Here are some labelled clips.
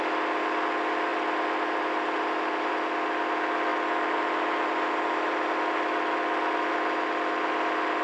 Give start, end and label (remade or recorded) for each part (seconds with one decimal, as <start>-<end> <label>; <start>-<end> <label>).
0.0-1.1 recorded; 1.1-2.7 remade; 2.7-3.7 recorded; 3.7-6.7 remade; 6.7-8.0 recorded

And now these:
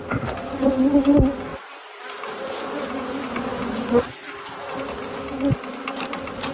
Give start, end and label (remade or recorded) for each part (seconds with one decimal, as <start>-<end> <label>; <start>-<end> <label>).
0.0-1.5 recorded; 1.5-2.4 remade; 2.4-6.5 recorded

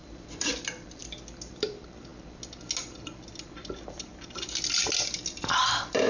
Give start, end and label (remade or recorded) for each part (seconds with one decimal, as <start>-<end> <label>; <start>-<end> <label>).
0.0-1.0 remade; 1.0-1.5 recorded; 1.5-2.1 remade; 2.1-3.5 recorded; 3.5-4.1 remade; 4.1-5.0 recorded; 5.0-6.1 remade

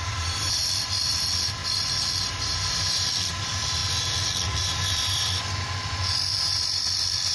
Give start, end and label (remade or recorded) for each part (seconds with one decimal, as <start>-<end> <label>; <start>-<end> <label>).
0.0-3.8 remade; 3.8-4.7 recorded; 4.7-6.3 remade; 6.3-7.3 recorded

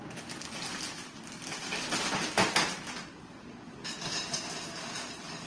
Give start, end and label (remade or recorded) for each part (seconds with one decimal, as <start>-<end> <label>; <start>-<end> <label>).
0.0-5.5 recorded